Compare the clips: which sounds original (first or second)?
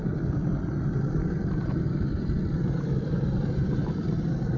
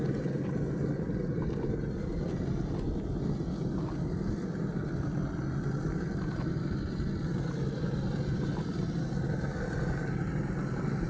second